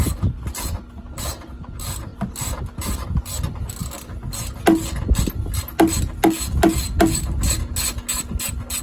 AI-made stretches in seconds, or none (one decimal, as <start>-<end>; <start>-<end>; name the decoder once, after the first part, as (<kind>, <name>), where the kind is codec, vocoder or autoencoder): none